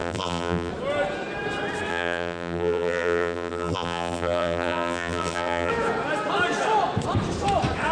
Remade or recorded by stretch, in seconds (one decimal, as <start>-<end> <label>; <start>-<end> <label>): 0.0-0.7 remade; 0.7-1.9 recorded; 1.9-5.7 remade; 5.7-7.9 recorded